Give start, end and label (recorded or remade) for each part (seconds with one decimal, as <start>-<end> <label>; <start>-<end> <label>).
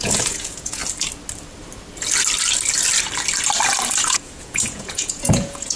0.0-0.8 remade; 0.8-4.0 recorded; 4.0-5.8 remade